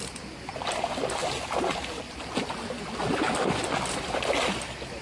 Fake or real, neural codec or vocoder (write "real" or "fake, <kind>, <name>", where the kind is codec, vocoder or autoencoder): real